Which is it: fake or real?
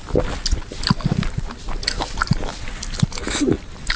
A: real